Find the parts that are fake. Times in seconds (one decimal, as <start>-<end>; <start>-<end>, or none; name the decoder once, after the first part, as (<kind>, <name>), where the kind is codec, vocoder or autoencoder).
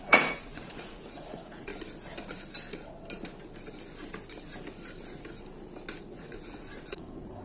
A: 0.0-1.7 (vocoder, Vocos); 6.0-7.4